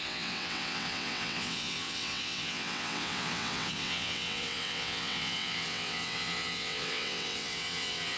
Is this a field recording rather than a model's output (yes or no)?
no